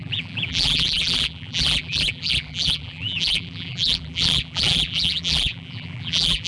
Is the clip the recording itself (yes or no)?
no